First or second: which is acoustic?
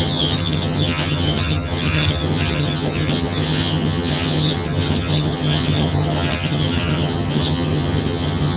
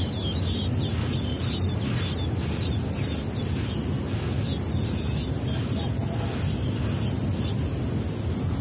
second